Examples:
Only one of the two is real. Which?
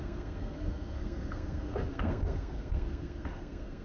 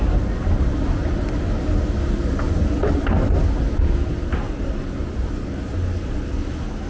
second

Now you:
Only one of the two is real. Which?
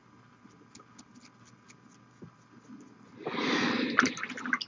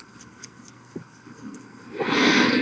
first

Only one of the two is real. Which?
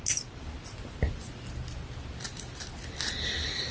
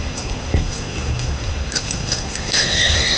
first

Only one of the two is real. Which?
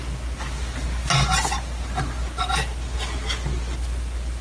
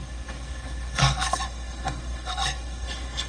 first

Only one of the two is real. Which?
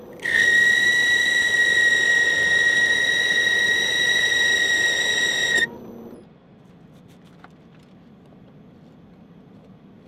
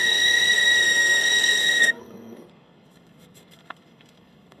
first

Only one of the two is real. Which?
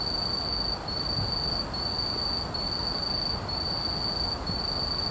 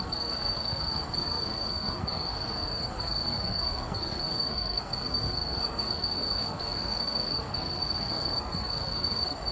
first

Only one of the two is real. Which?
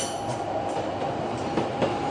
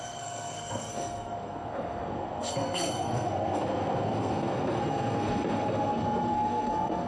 first